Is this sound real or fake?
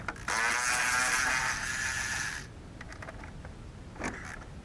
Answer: real